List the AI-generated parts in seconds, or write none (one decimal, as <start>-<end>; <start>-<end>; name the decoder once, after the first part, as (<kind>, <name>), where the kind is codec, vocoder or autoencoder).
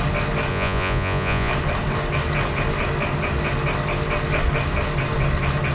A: 0.5-1.5 (vocoder, Vocos)